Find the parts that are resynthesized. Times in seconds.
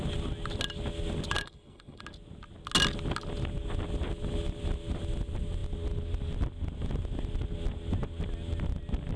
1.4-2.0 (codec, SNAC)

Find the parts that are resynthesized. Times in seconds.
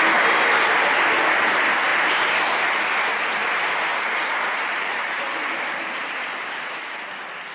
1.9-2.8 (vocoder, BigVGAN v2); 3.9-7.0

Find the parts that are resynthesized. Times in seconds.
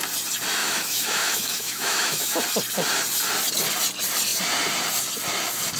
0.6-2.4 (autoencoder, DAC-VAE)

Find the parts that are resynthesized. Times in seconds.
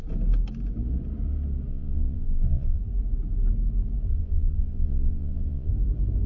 1.7-2.8 (vocoder, Vocos); 4.1-5.7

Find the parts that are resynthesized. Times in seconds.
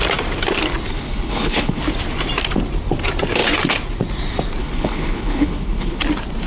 0.9-1.8 (codec, HILCodec); 4.6-6.0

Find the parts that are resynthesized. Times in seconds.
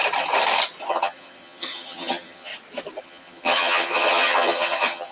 0.9-2.5 (vocoder, HiFi-GAN); 3.0-5.1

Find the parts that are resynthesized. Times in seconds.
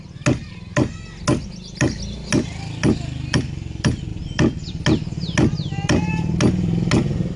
none